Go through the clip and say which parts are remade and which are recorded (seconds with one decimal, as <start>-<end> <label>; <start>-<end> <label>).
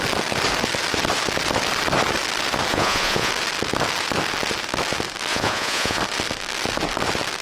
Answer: 0.0-2.7 recorded; 2.7-3.3 remade; 3.3-5.3 recorded; 5.3-6.0 remade; 6.0-7.4 recorded